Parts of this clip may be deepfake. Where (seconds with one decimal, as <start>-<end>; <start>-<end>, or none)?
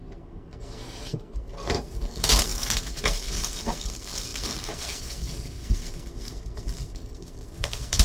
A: 0.0-8.0